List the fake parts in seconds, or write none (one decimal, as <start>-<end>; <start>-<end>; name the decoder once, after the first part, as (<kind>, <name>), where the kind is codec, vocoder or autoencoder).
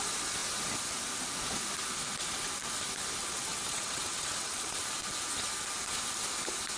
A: 3.2-4.8 (vocoder, WaveNeXt)